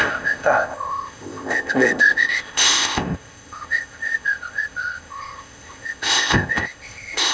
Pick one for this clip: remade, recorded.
remade